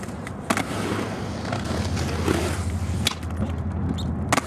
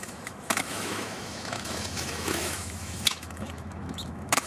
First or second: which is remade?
second